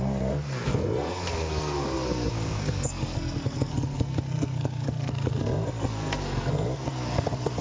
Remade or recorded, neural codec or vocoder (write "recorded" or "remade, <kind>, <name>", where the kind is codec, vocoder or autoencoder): remade, codec, SNAC